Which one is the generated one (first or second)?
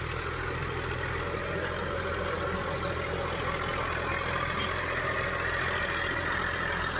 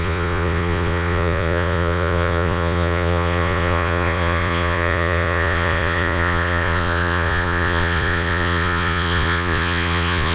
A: second